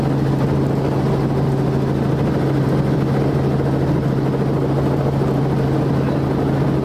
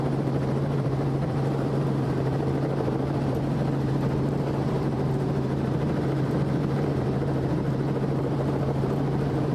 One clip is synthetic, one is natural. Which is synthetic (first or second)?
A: second